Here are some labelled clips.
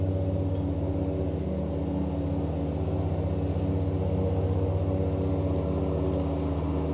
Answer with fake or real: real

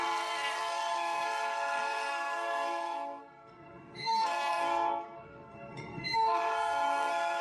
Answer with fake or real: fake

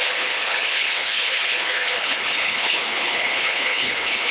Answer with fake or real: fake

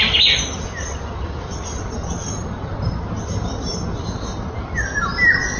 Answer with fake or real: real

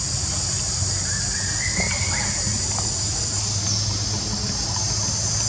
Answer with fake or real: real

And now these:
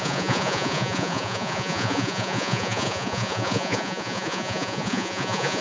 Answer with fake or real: fake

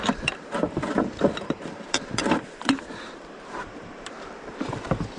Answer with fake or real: fake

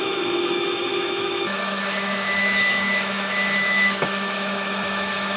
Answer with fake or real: fake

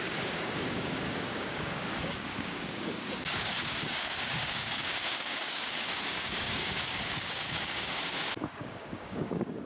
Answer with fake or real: fake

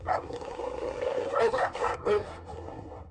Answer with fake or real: fake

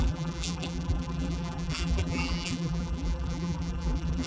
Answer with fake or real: fake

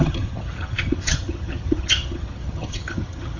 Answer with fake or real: fake